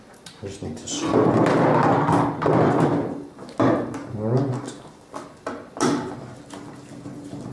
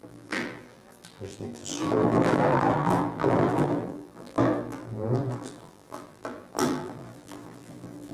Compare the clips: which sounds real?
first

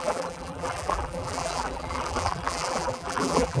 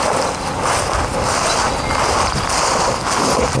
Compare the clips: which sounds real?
second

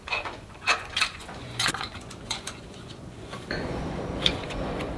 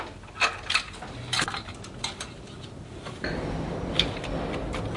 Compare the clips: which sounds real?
second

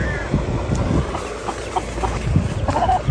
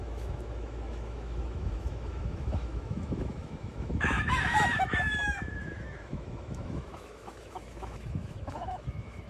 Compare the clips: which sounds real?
first